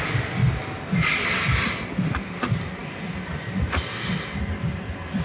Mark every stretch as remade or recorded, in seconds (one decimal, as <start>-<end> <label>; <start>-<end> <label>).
0.0-0.4 remade; 0.4-2.2 recorded; 2.2-5.2 remade